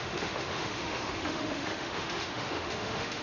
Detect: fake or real fake